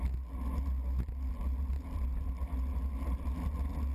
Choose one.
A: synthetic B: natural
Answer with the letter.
B